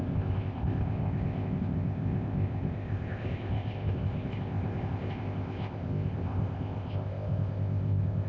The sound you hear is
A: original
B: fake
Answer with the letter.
B